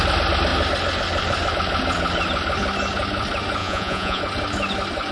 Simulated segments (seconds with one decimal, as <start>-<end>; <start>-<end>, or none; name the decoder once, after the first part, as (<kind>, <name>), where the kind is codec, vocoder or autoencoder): 3.6-4.2 (vocoder, Vocos)